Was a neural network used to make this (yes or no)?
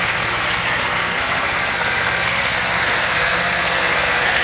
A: yes